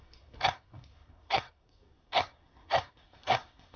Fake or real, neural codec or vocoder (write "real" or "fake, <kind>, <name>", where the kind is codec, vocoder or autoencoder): fake, codec, SNAC